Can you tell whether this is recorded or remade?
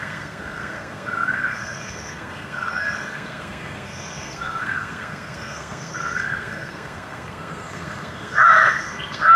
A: remade